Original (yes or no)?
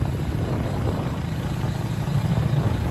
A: yes